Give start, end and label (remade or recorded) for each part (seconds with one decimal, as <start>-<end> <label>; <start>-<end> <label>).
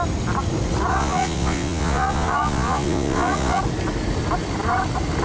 0.0-0.9 recorded; 0.9-3.6 remade; 3.6-5.2 recorded